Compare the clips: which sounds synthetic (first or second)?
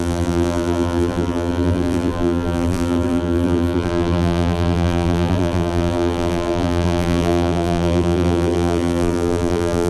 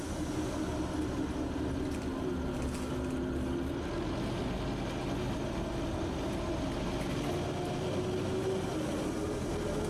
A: first